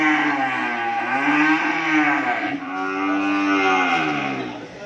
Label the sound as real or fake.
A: real